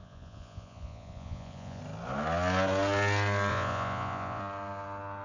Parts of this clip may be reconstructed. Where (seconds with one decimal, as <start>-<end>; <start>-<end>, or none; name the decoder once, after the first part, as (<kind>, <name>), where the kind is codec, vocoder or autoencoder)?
0.0-1.8 (vocoder, Vocos); 3.5-4.4